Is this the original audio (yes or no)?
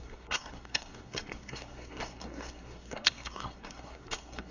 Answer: no